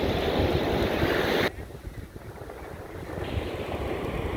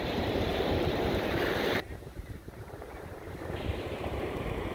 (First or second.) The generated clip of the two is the second